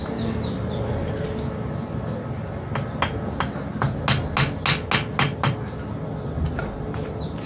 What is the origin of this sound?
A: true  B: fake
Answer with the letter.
A